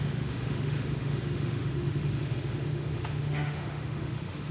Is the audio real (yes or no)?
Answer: no